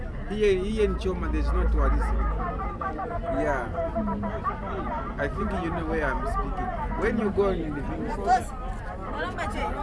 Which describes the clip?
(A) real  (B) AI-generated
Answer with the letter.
A